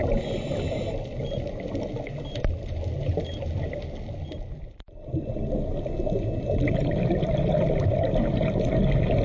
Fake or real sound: real